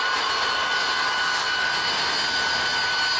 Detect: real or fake real